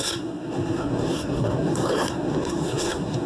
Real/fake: fake